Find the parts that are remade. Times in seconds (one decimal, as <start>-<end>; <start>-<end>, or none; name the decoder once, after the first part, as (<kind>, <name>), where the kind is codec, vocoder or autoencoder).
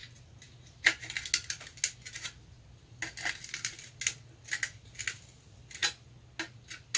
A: none